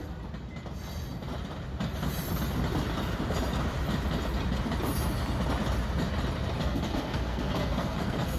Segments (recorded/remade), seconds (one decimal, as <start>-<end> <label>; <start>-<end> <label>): 0.0-6.6 recorded; 6.6-8.4 remade